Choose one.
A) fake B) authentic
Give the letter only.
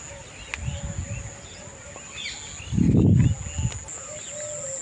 B